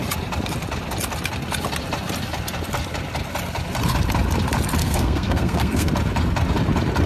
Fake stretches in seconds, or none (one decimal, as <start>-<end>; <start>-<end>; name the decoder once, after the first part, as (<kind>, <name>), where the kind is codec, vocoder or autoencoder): 4.8-5.9 (codec, SNAC)